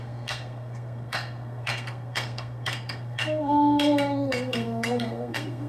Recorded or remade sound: remade